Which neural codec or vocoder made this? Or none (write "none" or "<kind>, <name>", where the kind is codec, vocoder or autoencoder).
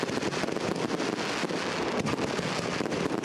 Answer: none